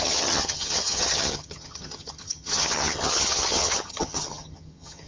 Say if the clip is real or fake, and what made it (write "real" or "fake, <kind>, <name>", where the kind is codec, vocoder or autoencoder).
fake, vocoder, HiFi-GAN